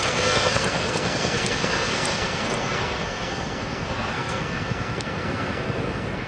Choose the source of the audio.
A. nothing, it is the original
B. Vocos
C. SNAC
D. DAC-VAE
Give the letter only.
C